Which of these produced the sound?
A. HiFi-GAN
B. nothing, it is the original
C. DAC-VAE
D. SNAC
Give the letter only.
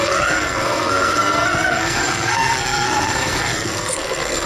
D